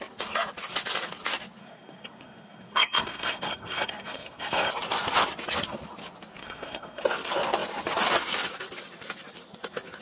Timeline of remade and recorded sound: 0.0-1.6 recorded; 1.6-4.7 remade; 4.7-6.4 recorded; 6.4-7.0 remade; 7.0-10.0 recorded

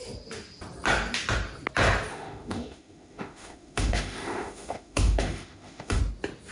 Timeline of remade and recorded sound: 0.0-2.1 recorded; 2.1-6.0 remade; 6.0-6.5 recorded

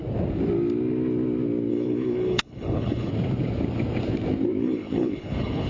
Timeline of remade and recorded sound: 0.0-1.7 recorded; 1.7-3.1 remade; 3.1-4.6 recorded; 4.6-5.7 remade

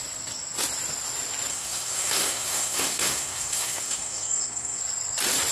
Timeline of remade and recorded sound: 0.0-1.5 recorded; 1.5-4.8 remade; 4.8-5.5 recorded

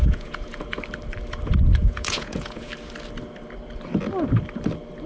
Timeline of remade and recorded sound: 0.0-0.8 remade; 0.8-1.8 recorded; 1.8-2.7 remade; 2.7-5.1 recorded

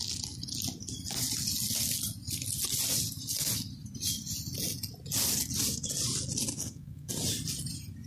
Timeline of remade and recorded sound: 0.0-6.5 recorded; 6.5-7.1 remade; 7.1-8.1 recorded